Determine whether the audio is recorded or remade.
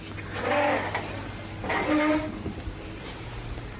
recorded